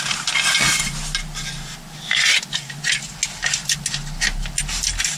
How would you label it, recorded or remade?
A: recorded